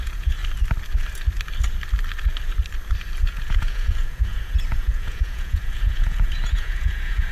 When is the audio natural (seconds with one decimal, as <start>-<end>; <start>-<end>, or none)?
0.4-3.2